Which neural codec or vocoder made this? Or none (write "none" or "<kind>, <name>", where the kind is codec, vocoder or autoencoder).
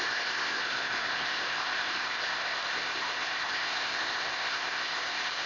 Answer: codec, ZipCodec